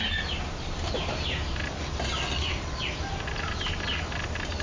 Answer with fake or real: real